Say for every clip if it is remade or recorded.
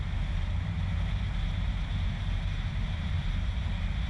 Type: remade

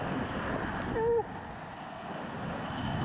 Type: recorded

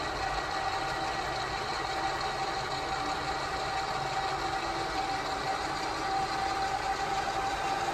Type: recorded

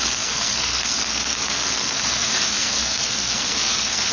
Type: remade